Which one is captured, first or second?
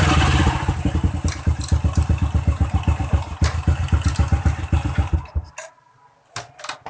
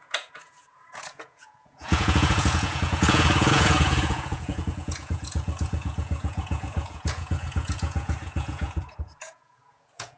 first